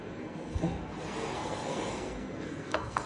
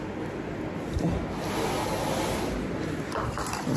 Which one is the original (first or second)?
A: second